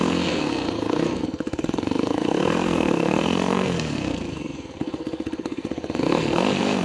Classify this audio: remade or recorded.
remade